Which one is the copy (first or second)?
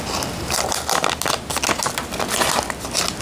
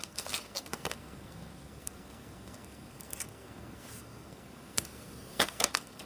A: second